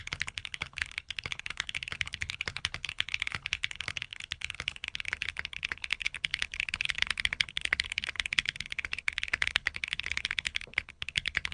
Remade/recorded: remade